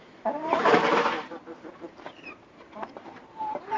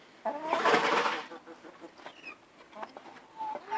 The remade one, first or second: first